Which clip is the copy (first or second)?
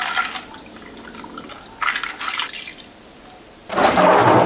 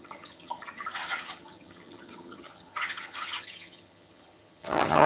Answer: second